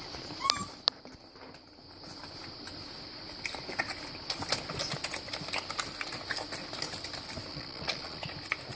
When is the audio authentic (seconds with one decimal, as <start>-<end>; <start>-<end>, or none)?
0.0-7.5; 8.2-8.7